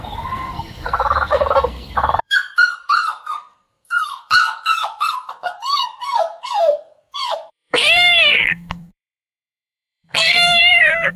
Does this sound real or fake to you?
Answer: fake